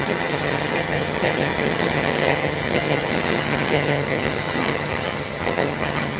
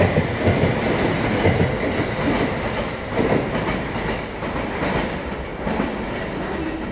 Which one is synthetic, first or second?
first